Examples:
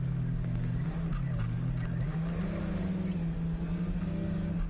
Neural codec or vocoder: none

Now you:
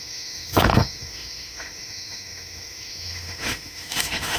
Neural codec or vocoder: autoencoder, DAC-VAE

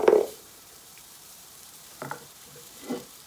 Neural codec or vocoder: vocoder, BigVGAN v2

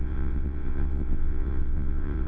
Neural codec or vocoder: vocoder, WaveNeXt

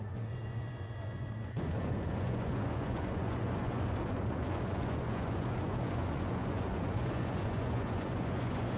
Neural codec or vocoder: vocoder, Vocos